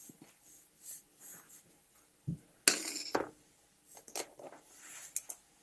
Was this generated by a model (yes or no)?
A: no